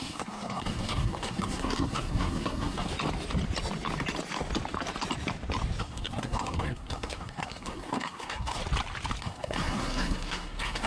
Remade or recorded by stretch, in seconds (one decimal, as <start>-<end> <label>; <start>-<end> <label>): 0.0-2.9 remade; 2.9-5.8 recorded; 5.8-8.6 remade; 8.6-9.2 recorded; 9.2-10.9 remade